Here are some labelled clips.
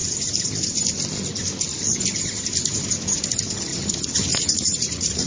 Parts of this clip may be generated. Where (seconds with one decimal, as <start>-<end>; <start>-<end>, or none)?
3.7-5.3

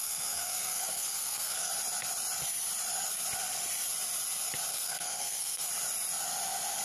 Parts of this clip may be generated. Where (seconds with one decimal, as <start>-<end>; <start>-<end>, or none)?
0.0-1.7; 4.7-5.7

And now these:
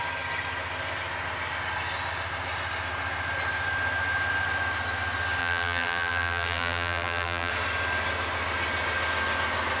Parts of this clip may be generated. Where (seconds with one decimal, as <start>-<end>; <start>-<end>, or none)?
5.4-7.5

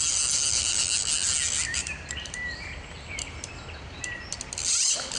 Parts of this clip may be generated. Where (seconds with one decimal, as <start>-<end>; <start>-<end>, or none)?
1.8-3.1

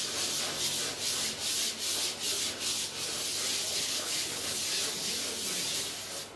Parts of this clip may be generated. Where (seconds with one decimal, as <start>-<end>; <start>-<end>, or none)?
3.7-4.6